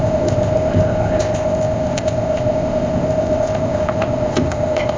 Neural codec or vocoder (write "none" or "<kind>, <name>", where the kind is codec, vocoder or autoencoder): codec, ZipCodec